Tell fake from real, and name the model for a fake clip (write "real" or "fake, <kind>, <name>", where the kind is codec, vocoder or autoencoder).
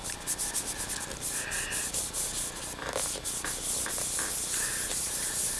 real